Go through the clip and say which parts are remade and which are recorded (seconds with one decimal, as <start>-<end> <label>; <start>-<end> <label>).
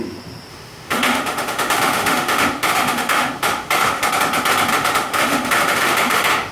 0.0-0.5 recorded; 0.5-4.1 remade; 4.1-4.7 recorded; 4.7-6.5 remade